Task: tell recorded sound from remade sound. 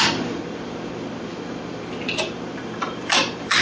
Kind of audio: recorded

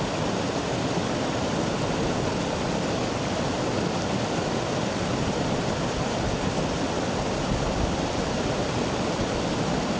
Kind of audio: recorded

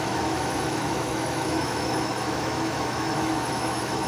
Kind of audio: remade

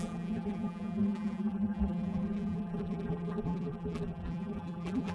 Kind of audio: remade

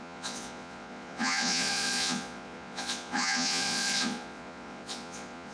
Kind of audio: remade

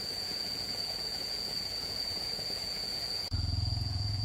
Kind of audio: remade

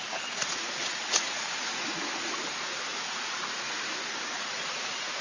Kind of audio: remade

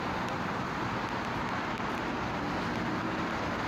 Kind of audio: recorded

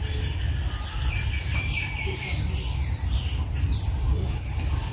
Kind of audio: recorded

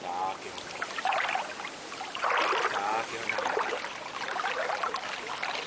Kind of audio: recorded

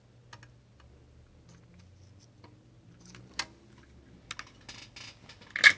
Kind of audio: recorded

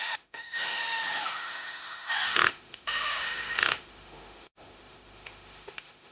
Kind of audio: remade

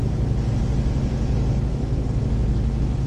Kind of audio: recorded